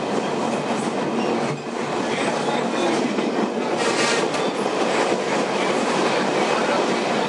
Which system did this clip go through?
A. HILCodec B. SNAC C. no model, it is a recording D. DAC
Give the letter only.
C